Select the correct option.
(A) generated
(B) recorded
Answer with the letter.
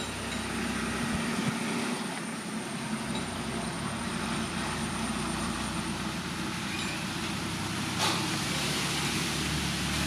B